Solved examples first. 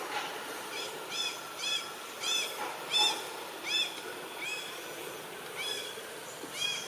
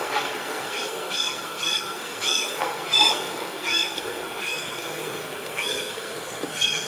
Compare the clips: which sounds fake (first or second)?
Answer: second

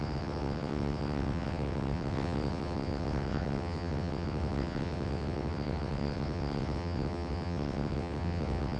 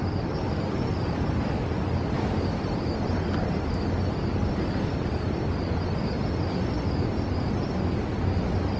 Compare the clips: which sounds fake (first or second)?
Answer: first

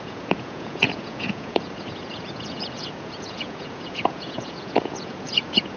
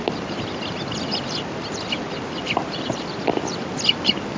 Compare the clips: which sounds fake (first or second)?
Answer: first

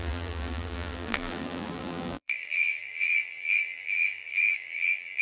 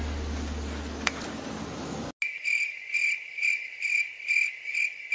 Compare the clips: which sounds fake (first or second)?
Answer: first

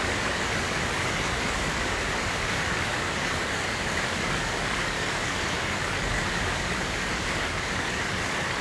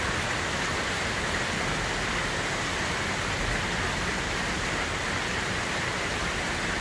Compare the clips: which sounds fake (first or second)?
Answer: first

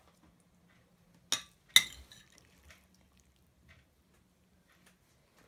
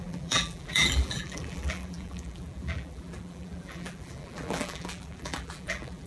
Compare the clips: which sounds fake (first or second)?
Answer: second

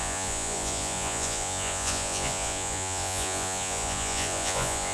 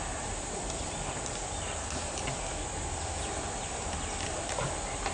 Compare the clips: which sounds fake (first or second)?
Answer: first